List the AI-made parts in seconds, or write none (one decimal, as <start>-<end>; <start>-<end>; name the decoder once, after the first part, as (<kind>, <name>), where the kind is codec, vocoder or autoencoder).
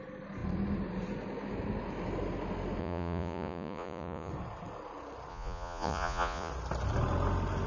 2.8-4.3 (vocoder, Vocos); 5.3-6.5